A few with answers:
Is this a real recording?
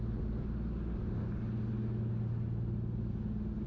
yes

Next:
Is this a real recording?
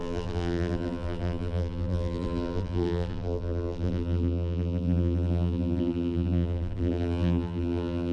no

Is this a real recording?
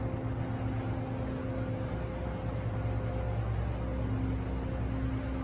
yes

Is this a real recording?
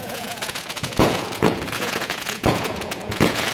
no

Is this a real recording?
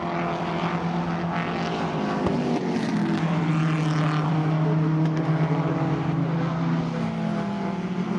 yes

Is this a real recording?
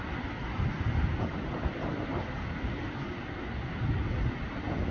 yes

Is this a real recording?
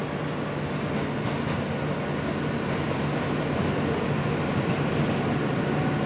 yes